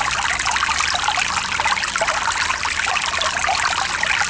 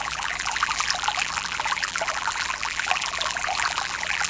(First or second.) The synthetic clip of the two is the second